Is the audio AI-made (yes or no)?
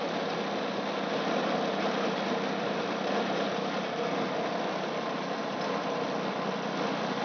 no